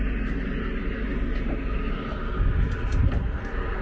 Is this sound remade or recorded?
recorded